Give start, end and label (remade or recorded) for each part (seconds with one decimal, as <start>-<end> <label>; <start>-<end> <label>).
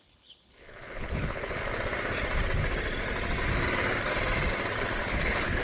0.0-1.6 remade; 1.6-5.0 recorded; 5.0-5.6 remade